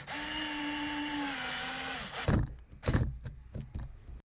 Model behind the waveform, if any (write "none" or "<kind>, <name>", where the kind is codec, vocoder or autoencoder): none